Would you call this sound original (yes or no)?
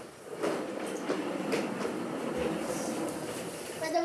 yes